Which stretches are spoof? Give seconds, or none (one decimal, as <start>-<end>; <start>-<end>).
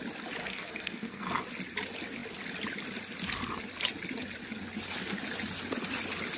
0.4-1.3